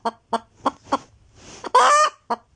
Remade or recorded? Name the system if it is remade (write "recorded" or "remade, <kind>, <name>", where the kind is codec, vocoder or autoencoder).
recorded